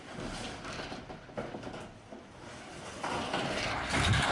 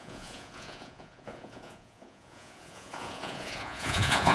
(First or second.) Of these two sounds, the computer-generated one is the second